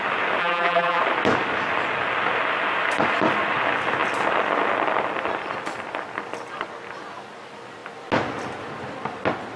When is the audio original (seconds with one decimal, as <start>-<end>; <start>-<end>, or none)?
0.0-0.4; 1.0-9.6